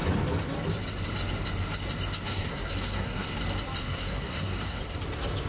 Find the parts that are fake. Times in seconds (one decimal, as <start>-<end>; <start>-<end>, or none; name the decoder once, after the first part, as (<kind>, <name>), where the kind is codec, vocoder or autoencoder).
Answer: 2.3-3.3 (codec, SNAC); 3.8-4.8